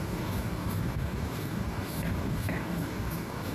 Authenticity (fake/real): fake